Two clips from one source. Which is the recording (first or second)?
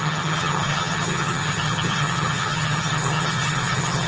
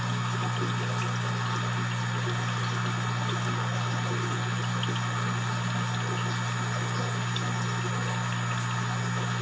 second